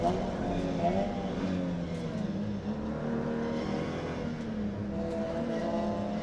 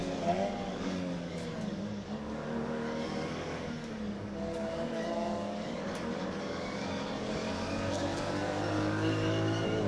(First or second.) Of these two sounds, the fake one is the second